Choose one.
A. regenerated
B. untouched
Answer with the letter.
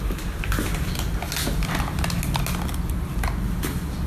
B